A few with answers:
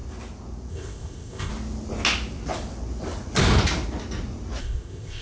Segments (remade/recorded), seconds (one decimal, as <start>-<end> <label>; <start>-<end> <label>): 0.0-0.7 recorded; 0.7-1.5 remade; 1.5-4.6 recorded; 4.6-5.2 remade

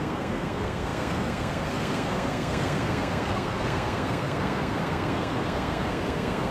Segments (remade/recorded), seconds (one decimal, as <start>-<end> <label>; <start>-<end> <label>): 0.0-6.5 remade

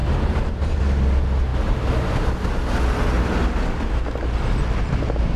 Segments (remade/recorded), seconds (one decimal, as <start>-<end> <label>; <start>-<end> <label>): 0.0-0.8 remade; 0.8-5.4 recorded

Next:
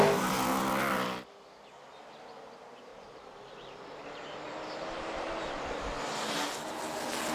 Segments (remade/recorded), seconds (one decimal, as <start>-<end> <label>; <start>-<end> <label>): 0.0-2.9 recorded; 2.9-6.8 remade; 6.8-7.3 recorded

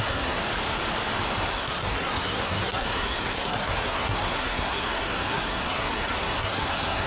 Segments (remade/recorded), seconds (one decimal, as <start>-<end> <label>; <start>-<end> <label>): 0.0-0.4 remade; 0.4-1.5 recorded; 1.5-7.1 remade